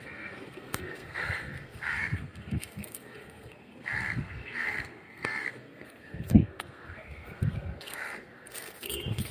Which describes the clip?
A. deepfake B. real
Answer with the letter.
A